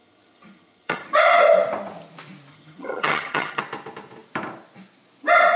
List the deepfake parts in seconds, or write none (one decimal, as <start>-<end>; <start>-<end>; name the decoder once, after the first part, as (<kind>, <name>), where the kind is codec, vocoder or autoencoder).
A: 0.0-1.3 (vocoder, HiFi-GAN); 2.5-3.6